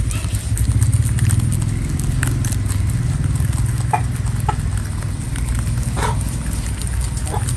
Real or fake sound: real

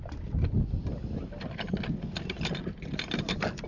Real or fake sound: real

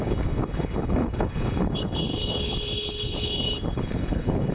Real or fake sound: fake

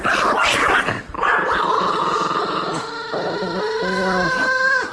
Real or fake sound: real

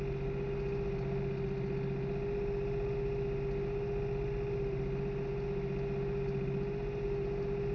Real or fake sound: real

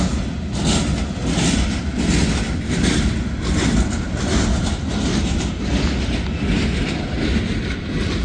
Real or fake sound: real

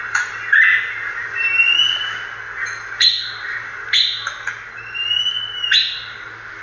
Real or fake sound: real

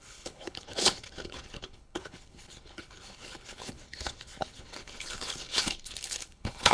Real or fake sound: fake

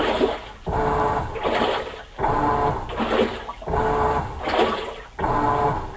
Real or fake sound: real